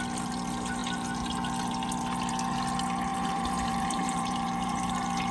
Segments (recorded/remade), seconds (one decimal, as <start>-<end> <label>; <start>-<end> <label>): 0.0-3.1 recorded; 3.1-5.3 remade